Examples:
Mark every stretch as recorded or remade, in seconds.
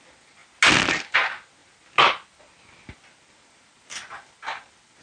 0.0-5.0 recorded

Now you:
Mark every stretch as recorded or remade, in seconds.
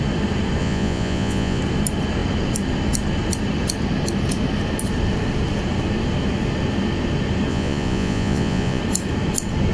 0.0-0.6 recorded; 0.6-1.6 remade; 1.6-7.5 recorded; 7.5-8.8 remade; 8.8-9.7 recorded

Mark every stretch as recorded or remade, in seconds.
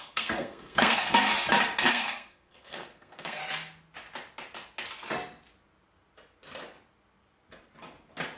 0.0-1.3 remade; 1.3-1.9 recorded; 1.9-3.4 remade; 3.4-8.4 recorded